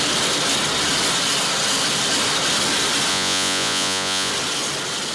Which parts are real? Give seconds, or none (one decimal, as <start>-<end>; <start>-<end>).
0.0-3.1; 4.3-5.1